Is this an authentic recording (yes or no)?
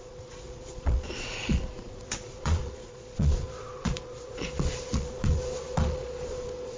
no